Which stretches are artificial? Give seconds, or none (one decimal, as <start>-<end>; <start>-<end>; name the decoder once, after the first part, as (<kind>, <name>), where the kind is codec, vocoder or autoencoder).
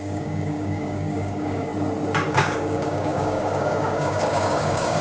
0.0-1.7 (codec, DAC); 2.3-5.0